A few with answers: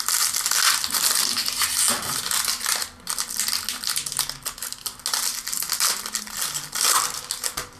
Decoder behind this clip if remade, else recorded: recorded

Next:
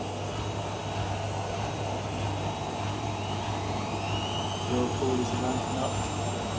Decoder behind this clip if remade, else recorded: recorded